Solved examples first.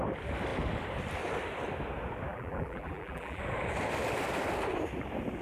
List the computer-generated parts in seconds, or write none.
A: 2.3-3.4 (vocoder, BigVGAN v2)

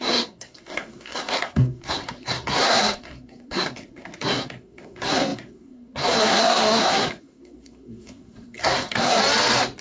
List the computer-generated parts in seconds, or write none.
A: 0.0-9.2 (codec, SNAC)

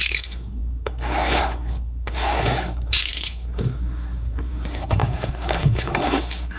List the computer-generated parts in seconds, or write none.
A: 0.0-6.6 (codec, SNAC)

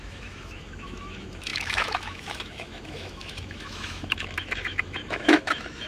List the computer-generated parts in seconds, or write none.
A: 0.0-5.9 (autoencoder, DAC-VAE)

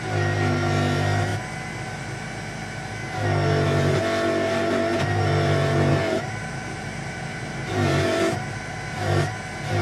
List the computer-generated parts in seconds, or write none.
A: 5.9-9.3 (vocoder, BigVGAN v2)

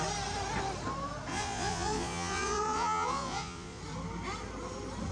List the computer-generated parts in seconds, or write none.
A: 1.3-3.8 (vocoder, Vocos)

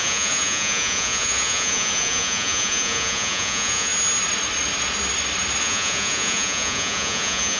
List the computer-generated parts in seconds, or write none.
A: 0.0-3.9 (vocoder, Vocos); 5.6-7.6

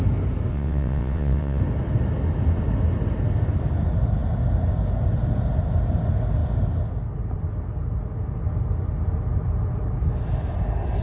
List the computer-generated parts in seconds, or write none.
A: 0.5-1.6 (vocoder, WaveNeXt)